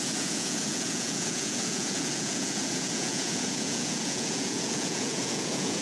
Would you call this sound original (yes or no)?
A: no